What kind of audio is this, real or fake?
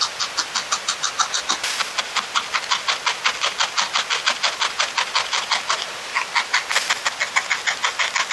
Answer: real